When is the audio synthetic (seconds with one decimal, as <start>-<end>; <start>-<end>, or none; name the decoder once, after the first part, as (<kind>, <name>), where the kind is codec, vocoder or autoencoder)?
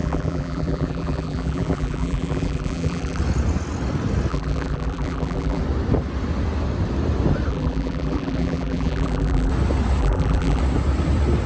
0.0-3.2 (vocoder, BigVGAN v2); 4.3-5.6; 7.5-9.5; 10.0-10.6